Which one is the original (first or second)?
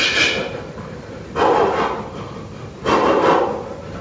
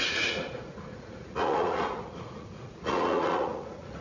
first